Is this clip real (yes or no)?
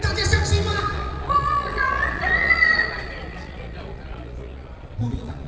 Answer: no